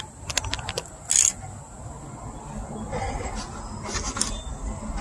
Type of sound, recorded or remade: recorded